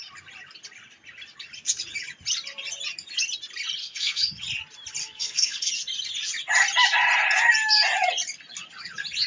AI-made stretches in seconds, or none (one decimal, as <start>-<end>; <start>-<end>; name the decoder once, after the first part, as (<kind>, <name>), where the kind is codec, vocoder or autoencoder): 3.8-4.3 (codec, SNAC); 5.0-5.7